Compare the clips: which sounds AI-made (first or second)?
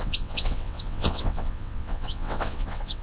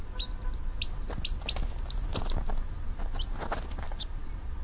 first